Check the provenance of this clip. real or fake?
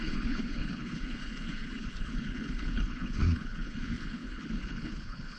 fake